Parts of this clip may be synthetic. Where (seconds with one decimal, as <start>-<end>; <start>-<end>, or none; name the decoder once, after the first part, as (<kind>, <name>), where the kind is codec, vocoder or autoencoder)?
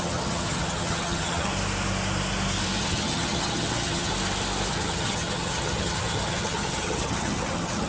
0.0-1.5 (vocoder, HiFi-GAN); 2.8-4.1; 4.7-7.9